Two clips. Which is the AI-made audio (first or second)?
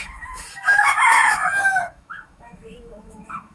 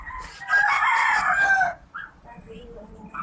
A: first